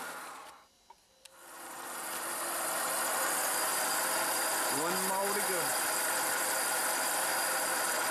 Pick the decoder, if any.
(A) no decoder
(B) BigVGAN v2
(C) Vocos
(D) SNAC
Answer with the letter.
B